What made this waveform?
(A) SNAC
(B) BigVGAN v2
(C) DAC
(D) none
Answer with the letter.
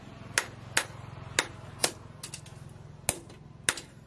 D